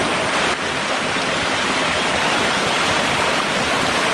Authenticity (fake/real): fake